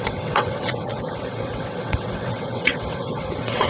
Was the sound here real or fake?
fake